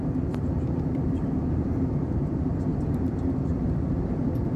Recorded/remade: remade